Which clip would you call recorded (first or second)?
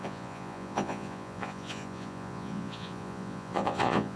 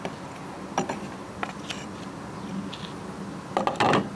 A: second